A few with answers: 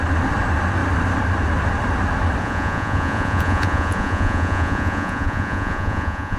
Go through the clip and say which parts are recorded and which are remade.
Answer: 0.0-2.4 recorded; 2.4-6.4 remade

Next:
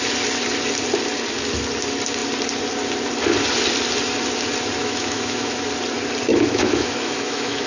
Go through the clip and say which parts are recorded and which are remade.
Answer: 0.0-4.8 recorded; 4.8-5.6 remade; 5.6-6.3 recorded; 6.3-7.7 remade

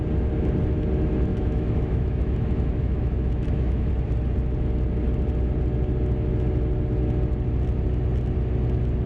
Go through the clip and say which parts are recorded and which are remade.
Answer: 0.0-1.3 recorded; 1.3-3.9 remade; 3.9-9.1 recorded

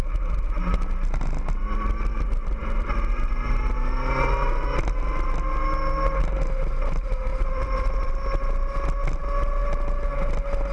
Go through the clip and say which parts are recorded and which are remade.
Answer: 0.0-2.6 recorded; 2.6-3.6 remade; 3.6-7.3 recorded; 7.3-8.1 remade; 8.1-10.7 recorded

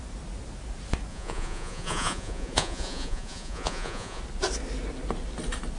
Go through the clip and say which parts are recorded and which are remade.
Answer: 0.0-1.1 recorded; 1.1-4.2 remade; 4.2-5.8 recorded

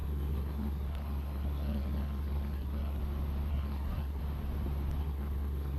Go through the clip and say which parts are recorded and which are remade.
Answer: 0.0-3.0 remade; 3.0-3.5 recorded; 3.5-4.2 remade; 4.2-5.0 recorded; 5.0-5.8 remade

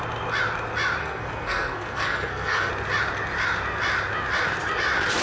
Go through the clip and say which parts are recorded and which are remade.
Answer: 0.0-1.0 recorded; 1.0-2.7 remade; 2.7-5.2 recorded